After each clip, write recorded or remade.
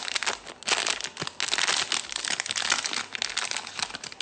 recorded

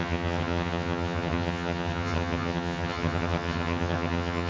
remade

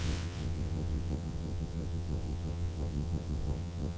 remade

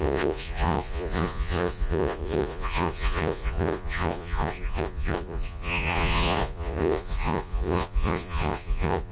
remade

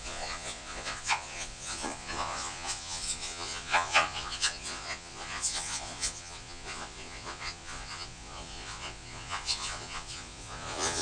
remade